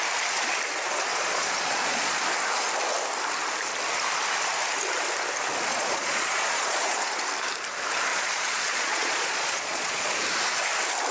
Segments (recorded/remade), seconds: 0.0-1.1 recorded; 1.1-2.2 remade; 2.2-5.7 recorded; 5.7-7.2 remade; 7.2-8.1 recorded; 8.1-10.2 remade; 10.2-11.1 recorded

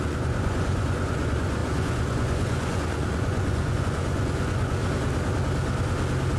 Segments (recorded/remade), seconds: 0.0-4.8 remade; 4.8-6.4 recorded

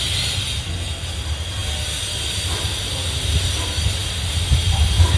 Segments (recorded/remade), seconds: 0.0-5.2 recorded

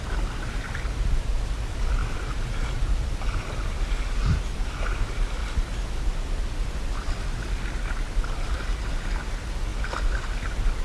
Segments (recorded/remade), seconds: 0.0-10.8 recorded